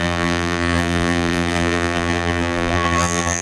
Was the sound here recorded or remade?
remade